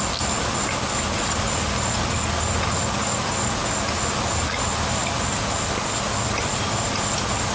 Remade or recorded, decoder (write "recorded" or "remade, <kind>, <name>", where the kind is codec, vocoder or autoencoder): recorded